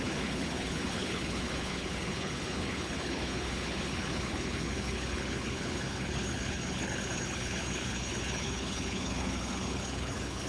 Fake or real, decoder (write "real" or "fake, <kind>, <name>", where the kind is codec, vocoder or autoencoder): fake, codec, HILCodec